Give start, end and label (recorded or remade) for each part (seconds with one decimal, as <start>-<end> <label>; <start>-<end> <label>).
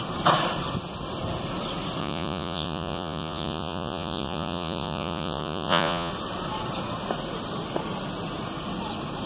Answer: 0.0-2.0 recorded; 2.0-6.1 remade; 6.1-9.3 recorded